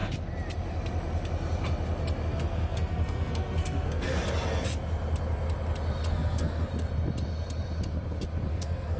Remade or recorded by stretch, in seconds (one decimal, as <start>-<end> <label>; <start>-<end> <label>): 0.0-2.3 recorded; 2.3-4.2 remade; 4.2-6.1 recorded; 6.1-6.7 remade; 6.7-8.5 recorded; 8.5-9.0 remade

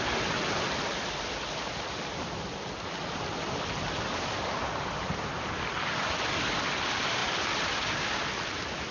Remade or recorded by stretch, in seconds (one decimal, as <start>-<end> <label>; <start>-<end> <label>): 0.0-8.9 recorded

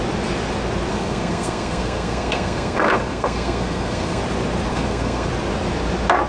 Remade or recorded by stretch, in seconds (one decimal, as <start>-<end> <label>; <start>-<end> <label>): 0.0-0.9 recorded; 0.9-4.2 remade; 4.2-4.7 recorded; 4.7-5.3 remade; 5.3-6.3 recorded

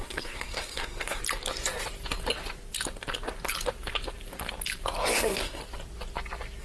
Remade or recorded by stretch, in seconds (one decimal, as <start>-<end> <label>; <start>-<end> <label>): 0.0-1.2 remade; 1.2-5.1 recorded; 5.1-5.6 remade; 5.6-6.6 recorded